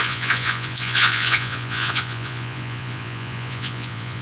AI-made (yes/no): yes